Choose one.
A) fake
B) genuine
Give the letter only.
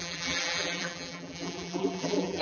A